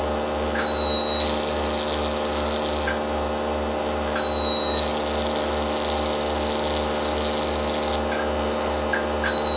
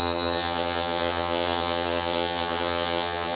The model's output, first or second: second